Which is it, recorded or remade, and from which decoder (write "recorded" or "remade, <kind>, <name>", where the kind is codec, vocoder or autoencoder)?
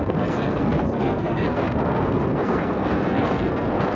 remade, codec, SNAC